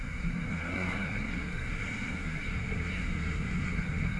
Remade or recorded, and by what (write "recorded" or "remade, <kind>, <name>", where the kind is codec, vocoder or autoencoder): remade, codec, SNAC